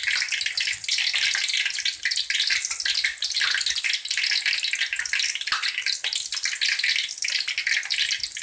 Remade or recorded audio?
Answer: recorded